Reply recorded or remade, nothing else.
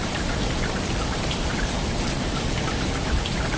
remade